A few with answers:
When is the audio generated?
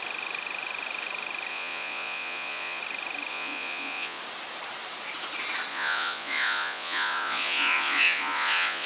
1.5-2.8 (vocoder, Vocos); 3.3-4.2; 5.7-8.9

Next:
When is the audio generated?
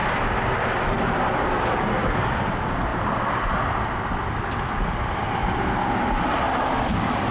none